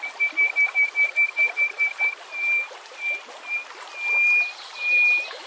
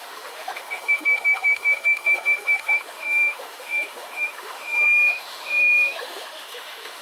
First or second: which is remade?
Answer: second